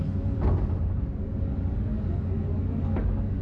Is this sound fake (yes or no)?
yes